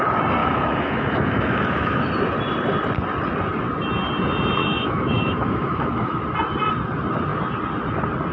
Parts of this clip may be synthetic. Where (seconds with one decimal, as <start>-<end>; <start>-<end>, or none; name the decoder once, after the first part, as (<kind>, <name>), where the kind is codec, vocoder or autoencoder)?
0.4-2.1 (autoencoder, DAC-VAE); 4.6-6.2